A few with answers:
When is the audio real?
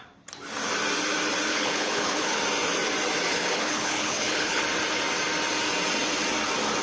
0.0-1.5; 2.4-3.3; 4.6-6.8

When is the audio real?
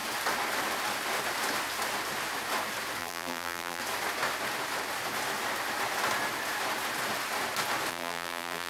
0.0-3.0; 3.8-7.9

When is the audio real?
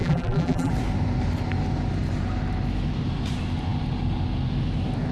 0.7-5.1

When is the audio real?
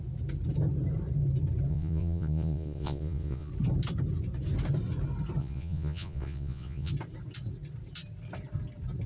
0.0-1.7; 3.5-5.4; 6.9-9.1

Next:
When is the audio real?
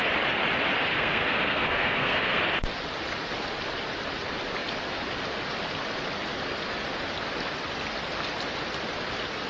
0.0-0.9; 2.4-9.5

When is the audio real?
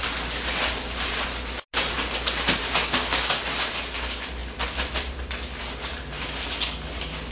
0.0-2.6; 3.4-7.3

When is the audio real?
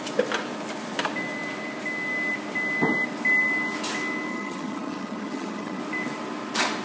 0.0-4.3; 5.8-6.8